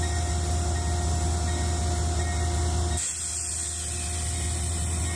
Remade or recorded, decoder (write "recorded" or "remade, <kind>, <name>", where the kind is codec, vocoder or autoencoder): recorded